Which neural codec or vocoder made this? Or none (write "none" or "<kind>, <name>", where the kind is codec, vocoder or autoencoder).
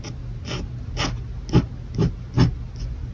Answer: none